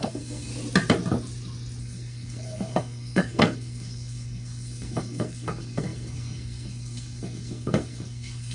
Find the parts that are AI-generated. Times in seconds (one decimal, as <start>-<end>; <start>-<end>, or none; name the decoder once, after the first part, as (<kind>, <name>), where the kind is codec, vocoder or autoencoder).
0.0-0.5 (codec, SNAC); 1.8-8.5